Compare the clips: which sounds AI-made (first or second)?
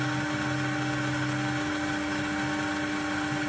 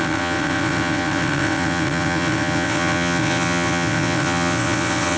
second